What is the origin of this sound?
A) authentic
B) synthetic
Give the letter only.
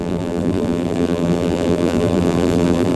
B